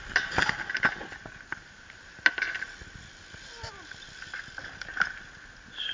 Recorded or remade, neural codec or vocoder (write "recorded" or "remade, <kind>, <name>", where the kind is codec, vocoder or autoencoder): recorded